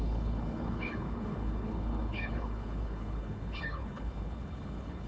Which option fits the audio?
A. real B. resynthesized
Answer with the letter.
B